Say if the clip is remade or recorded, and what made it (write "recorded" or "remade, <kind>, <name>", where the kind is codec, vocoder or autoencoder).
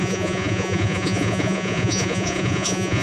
remade, vocoder, Vocos